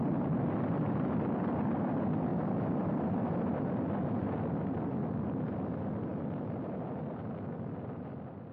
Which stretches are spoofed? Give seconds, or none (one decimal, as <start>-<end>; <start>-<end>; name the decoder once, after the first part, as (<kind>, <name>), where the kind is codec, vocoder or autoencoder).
none